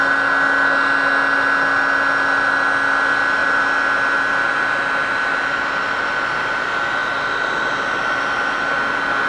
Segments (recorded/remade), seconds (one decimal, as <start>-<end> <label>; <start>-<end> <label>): 0.0-9.3 recorded